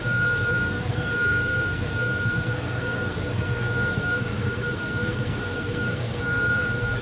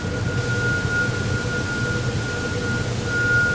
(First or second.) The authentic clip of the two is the second